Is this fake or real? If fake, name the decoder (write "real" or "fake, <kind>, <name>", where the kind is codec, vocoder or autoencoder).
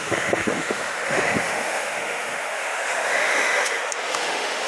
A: fake, autoencoder, DAC-VAE